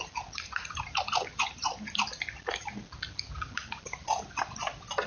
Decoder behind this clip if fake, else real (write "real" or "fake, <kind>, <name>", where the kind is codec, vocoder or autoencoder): real